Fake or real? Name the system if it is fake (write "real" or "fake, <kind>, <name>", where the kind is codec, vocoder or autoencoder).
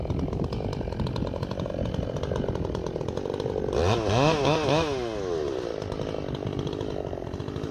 real